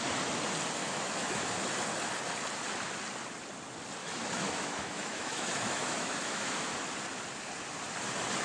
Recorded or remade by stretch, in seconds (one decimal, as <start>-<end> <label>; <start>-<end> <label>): 0.0-0.8 recorded; 0.8-1.5 remade; 1.5-4.0 recorded; 4.0-6.7 remade; 6.7-8.4 recorded